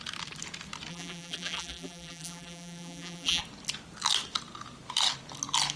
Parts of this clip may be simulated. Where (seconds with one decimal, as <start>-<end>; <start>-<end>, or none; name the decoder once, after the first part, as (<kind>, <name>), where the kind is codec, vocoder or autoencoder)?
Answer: 0.9-3.4 (vocoder, BigVGAN v2)